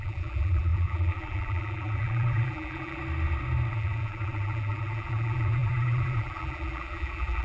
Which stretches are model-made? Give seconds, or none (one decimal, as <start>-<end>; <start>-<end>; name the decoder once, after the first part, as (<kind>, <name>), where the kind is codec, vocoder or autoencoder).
0.0-3.0 (vocoder, BigVGAN v2); 3.7-7.4